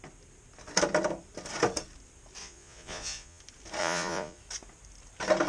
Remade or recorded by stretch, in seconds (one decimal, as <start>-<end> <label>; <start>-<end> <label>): 0.0-2.4 recorded; 2.4-3.4 remade; 3.4-3.8 recorded; 3.8-4.4 remade; 4.4-5.5 recorded